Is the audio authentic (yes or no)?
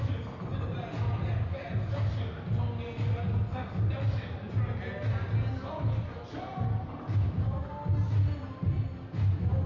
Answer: yes